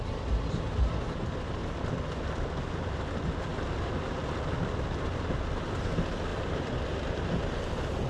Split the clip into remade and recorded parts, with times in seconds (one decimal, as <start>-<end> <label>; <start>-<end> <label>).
0.0-3.5 recorded; 3.5-4.3 remade; 4.3-6.3 recorded; 6.3-6.8 remade; 6.8-8.1 recorded